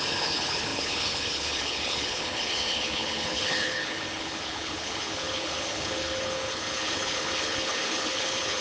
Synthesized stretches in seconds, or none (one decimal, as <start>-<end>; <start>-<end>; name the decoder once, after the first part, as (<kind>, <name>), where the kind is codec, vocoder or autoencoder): 0.0-8.6 (codec, HILCodec)